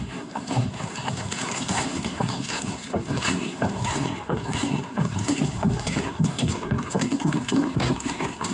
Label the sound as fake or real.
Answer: fake